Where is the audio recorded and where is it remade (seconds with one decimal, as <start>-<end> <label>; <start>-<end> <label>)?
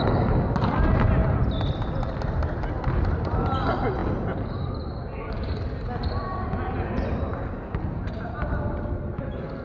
0.0-9.6 recorded